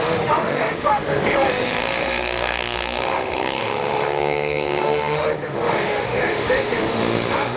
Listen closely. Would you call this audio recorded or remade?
remade